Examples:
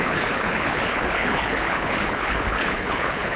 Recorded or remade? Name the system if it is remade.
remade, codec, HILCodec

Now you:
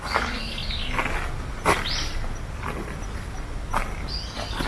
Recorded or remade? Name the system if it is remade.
recorded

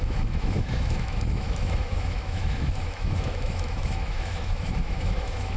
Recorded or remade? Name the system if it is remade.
remade, autoencoder, DAC-VAE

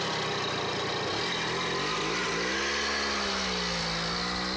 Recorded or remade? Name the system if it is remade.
recorded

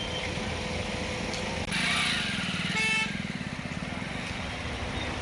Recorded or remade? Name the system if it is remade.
recorded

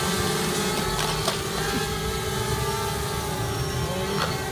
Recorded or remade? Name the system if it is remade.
recorded